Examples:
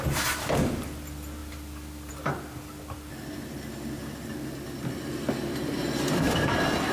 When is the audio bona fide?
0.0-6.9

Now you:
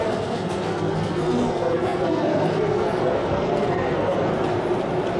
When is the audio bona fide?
4.3-5.2

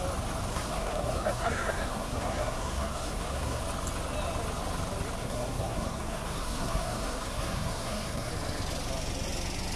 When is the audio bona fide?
0.0-0.5; 3.6-5.2; 8.3-9.8

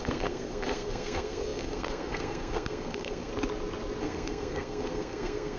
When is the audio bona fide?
3.3-4.0